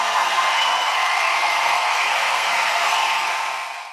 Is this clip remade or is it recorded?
remade